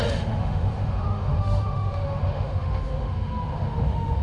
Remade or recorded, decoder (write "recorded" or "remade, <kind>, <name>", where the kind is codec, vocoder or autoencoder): remade, autoencoder, DAC-VAE